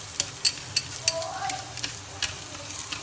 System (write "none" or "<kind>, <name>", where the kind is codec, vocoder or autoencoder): none